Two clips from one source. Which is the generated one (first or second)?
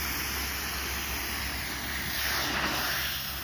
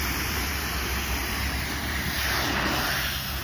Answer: second